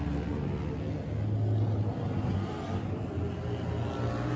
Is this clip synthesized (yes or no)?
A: no